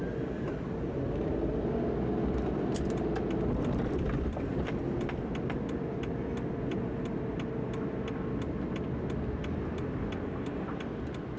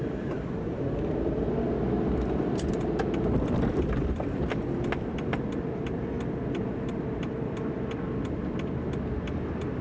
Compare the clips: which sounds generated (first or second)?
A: second